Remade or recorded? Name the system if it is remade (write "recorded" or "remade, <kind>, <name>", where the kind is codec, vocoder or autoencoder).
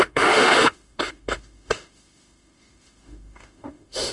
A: remade, autoencoder, DAC-VAE